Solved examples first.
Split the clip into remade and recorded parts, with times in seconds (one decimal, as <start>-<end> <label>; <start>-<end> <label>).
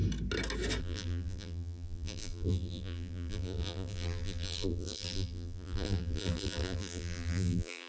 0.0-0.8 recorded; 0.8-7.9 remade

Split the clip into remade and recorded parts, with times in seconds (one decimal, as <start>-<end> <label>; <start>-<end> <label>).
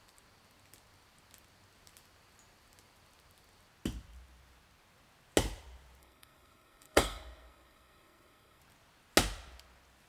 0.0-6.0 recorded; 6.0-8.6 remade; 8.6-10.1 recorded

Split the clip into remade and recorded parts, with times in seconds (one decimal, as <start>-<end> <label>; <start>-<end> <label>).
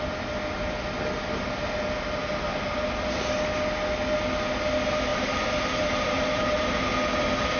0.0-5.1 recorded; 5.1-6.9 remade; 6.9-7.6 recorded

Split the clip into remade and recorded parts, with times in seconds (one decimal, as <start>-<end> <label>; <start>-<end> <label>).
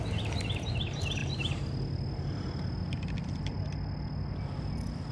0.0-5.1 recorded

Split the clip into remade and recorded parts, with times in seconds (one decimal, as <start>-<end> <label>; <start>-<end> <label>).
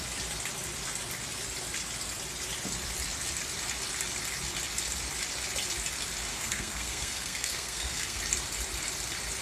0.0-6.3 recorded; 6.3-8.2 remade; 8.2-9.4 recorded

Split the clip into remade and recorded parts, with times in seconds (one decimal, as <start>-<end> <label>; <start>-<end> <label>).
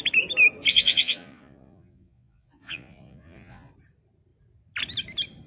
0.0-0.7 recorded; 0.7-3.7 remade; 3.7-5.5 recorded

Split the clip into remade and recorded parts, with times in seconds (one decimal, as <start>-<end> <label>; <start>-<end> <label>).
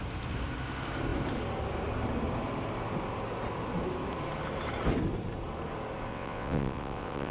0.0-6.1 recorded; 6.1-7.3 remade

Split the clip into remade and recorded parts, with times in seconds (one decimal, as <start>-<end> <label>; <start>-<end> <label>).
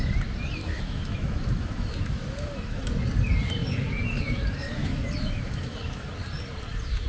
0.0-0.6 recorded; 0.6-2.9 remade; 2.9-3.6 recorded; 3.6-6.1 remade; 6.1-7.1 recorded